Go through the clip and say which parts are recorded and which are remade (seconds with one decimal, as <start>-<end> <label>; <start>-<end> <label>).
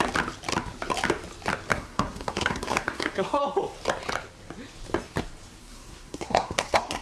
0.0-1.7 recorded; 1.7-3.4 remade; 3.4-5.6 recorded; 5.6-7.0 remade